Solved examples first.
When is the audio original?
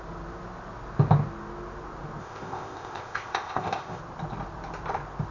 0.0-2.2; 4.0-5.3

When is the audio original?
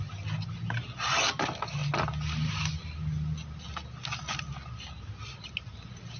0.0-6.2